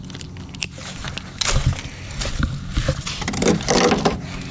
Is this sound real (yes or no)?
yes